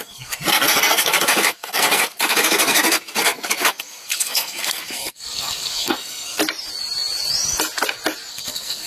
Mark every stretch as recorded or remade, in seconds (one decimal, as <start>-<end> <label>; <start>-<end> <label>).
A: 0.0-6.4 remade; 6.4-8.3 recorded; 8.3-8.9 remade

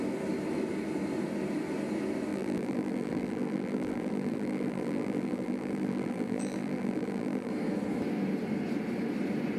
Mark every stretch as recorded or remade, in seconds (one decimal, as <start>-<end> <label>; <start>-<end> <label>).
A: 0.0-2.3 recorded; 2.3-7.5 remade; 7.5-9.6 recorded

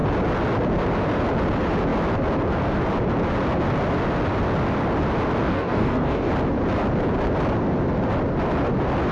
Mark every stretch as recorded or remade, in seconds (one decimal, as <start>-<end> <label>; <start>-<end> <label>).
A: 0.0-5.4 recorded; 5.4-6.3 remade; 6.3-9.1 recorded